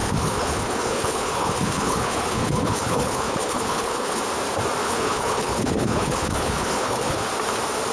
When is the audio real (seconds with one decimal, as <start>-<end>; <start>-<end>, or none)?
4.2-4.8; 7.2-7.9